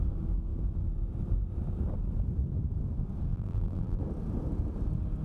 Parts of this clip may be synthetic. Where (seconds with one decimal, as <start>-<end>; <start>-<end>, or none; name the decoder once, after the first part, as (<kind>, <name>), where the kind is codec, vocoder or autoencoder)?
3.3-4.0 (vocoder, BigVGAN v2)